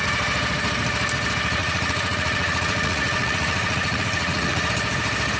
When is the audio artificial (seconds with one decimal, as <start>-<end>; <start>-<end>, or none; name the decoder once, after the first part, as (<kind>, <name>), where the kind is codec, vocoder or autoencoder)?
1.6-4.7 (vocoder, Vocos)